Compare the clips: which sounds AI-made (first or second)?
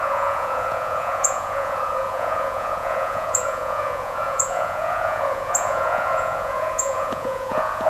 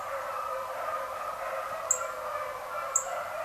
first